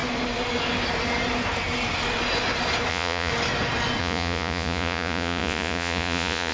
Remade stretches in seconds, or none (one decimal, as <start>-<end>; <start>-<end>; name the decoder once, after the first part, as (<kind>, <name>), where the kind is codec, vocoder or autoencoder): 2.9-3.3 (vocoder, Vocos); 4.0-6.5